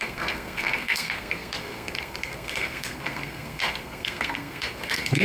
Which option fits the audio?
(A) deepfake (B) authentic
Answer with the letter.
A